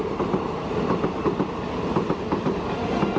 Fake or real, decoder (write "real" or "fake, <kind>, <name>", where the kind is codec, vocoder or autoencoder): real